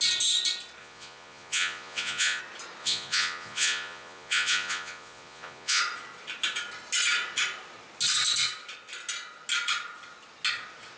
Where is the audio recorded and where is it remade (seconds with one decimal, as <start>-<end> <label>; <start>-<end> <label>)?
0.0-0.8 recorded; 0.8-2.4 remade; 2.4-2.8 recorded; 2.8-5.8 remade; 5.8-11.0 recorded